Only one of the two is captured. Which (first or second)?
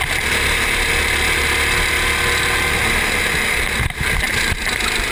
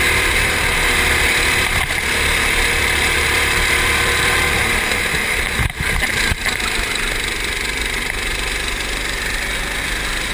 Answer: first